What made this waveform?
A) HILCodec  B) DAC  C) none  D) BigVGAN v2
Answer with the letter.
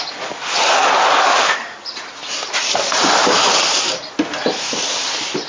C